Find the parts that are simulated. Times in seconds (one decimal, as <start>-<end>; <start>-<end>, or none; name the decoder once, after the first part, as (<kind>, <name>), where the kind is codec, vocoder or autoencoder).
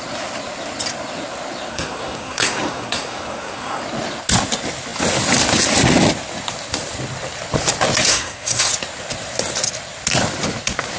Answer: 1.7-3.8 (codec, SNAC); 8.1-8.7